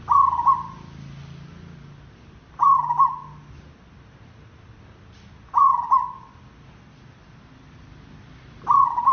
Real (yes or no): yes